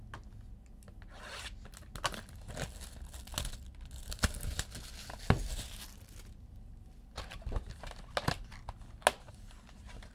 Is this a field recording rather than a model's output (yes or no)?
yes